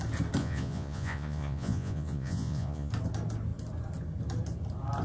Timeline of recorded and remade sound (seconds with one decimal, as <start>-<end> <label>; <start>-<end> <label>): 0.0-0.4 recorded; 0.4-2.9 remade; 2.9-5.0 recorded